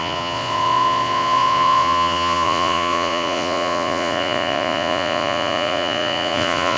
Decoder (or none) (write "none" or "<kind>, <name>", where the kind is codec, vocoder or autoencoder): vocoder, Vocos